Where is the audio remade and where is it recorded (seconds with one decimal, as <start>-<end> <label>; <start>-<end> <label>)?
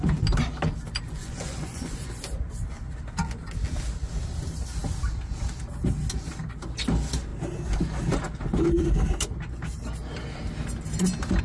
0.0-1.2 recorded; 1.2-2.1 remade; 2.1-11.4 recorded